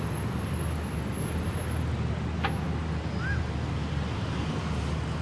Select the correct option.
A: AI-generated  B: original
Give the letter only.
B